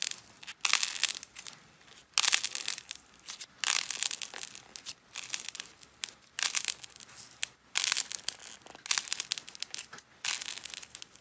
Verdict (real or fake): real